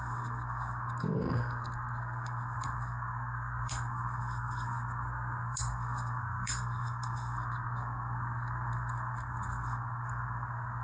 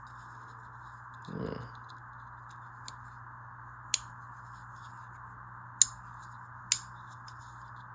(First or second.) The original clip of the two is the second